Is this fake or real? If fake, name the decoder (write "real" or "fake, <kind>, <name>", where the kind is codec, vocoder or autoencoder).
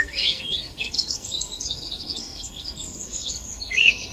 fake, codec, SNAC